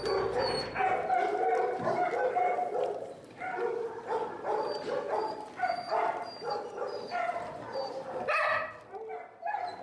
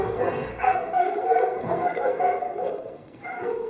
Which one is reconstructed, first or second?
second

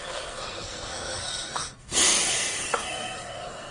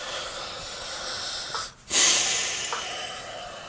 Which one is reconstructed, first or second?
first